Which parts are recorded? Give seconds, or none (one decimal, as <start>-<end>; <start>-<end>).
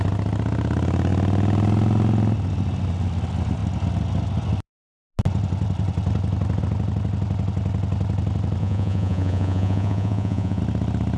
0.0-8.6; 10.6-11.2